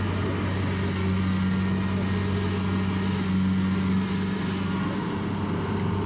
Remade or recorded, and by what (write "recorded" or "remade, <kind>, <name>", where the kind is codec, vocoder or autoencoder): recorded